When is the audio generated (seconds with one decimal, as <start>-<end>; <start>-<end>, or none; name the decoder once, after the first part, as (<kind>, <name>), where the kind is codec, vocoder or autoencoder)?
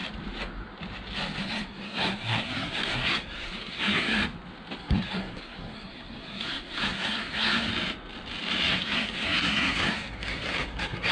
1.4-4.2 (codec, SNAC); 4.8-7.7; 8.7-11.1